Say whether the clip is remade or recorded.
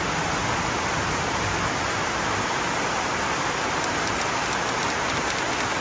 recorded